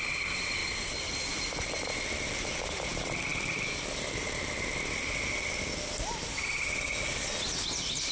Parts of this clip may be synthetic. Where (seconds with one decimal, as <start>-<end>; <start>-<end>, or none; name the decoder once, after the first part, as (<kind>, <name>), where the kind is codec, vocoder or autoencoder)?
none